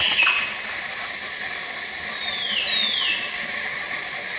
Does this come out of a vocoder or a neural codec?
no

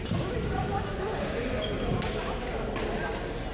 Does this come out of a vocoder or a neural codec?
no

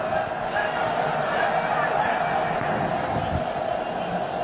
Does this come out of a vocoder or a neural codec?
no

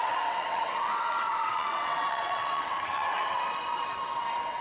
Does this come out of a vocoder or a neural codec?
yes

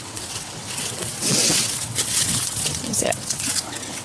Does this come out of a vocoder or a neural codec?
yes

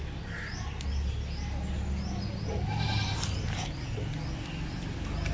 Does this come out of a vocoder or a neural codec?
no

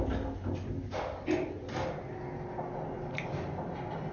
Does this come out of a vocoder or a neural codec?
no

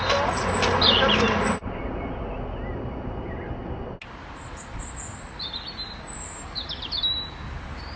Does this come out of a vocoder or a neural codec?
no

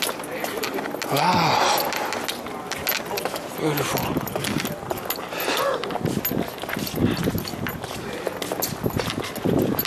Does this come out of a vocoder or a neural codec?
no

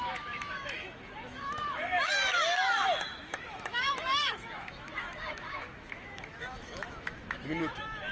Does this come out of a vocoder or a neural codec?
yes